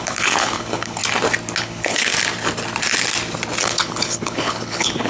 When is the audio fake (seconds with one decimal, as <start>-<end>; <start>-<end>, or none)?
0.0-1.0; 1.6-2.1; 3.6-5.1